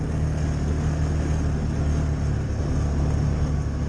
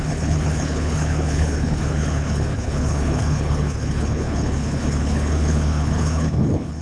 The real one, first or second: first